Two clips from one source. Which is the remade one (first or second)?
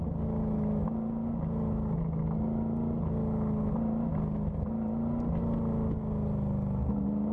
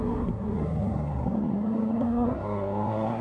second